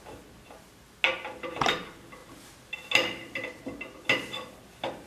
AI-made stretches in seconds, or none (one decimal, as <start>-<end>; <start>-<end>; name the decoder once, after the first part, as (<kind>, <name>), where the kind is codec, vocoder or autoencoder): none